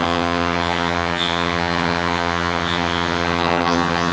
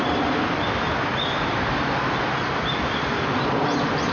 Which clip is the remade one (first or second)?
first